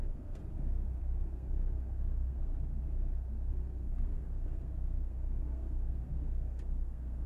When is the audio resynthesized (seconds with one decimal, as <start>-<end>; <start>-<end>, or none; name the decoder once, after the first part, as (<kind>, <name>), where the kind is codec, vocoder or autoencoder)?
0.0-0.4 (codec, SNAC); 1.0-2.5; 3.5-7.3